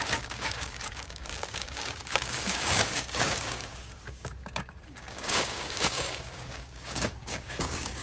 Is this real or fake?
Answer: fake